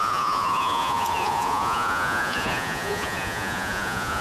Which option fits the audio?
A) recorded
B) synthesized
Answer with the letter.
B